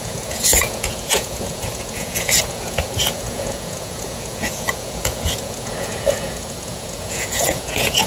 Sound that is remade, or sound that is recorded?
remade